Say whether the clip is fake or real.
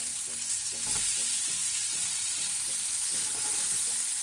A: real